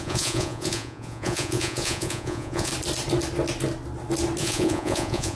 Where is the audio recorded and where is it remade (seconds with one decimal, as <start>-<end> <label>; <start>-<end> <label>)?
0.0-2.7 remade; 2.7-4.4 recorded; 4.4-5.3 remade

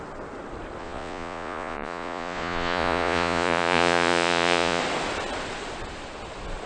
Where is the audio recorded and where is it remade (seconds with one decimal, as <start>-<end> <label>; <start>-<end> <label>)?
0.0-0.8 recorded; 0.8-4.8 remade; 4.8-6.7 recorded

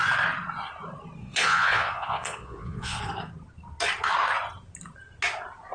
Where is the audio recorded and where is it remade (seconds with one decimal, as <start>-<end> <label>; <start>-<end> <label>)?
0.0-1.2 recorded; 1.2-3.0 remade; 3.0-5.7 recorded